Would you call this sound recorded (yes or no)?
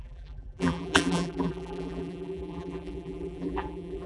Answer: no